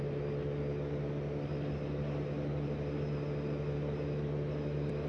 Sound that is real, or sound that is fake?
real